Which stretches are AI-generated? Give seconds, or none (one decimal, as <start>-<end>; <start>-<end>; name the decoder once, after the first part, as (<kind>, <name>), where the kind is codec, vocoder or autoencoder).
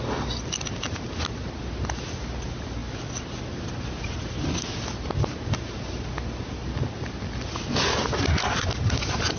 none